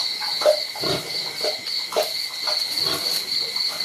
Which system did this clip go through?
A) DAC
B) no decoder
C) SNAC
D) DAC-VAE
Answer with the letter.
B